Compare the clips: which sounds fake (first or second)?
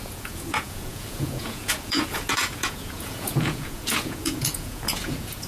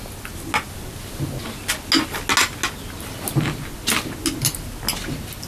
first